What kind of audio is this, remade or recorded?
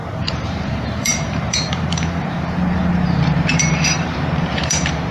remade